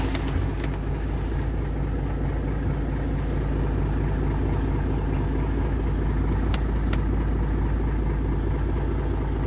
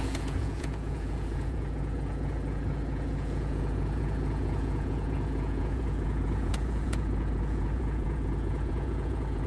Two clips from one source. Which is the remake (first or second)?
second